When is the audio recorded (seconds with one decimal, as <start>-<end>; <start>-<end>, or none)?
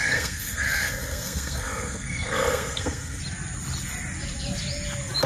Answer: 3.2-5.3